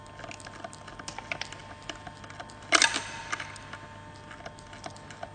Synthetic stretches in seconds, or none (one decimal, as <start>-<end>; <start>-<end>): none